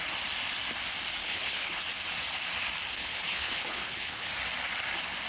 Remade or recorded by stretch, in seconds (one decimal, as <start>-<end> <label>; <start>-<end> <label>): 0.0-1.2 recorded; 1.2-1.8 remade; 1.8-2.9 recorded; 2.9-4.3 remade; 4.3-5.3 recorded